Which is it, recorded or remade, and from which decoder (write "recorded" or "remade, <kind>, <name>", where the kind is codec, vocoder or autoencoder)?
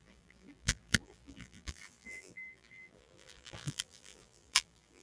remade, vocoder, BigVGAN v2